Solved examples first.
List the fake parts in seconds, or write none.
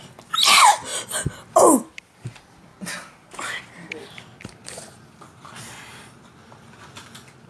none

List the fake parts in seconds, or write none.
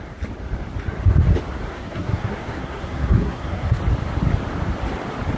1.7-3.8 (codec, SNAC)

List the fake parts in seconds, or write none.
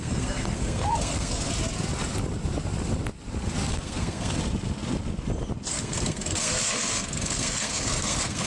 0.0-1.5 (codec, SNAC); 3.7-4.4; 5.7-8.5